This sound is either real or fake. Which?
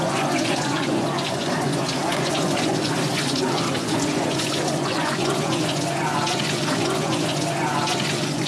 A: fake